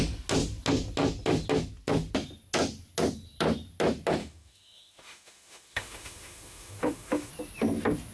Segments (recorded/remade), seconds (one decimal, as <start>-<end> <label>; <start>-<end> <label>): 0.0-4.2 recorded; 4.2-7.3 remade; 7.3-8.1 recorded